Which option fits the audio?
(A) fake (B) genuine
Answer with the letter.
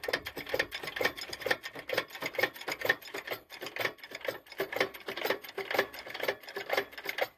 B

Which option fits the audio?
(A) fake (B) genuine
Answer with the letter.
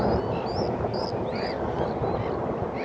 B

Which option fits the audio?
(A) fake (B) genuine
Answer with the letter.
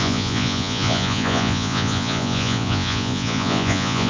A